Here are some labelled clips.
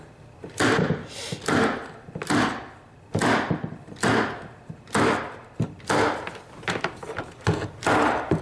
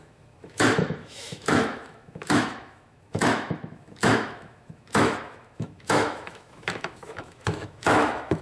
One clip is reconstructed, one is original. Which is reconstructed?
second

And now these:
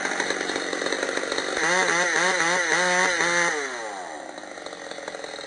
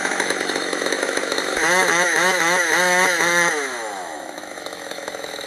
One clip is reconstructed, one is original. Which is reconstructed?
second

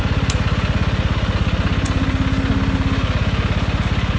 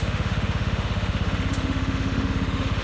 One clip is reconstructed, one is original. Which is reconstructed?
second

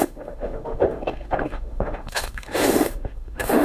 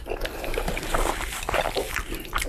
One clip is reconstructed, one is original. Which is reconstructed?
first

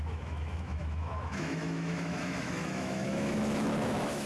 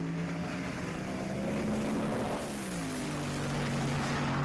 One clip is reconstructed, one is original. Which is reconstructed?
first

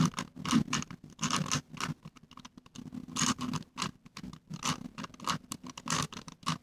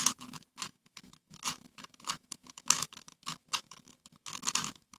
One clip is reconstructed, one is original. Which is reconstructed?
second